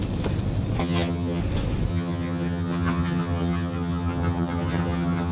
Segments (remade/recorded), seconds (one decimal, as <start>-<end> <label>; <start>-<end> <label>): 0.0-0.8 recorded; 0.8-1.4 remade; 1.4-1.9 recorded; 1.9-5.3 remade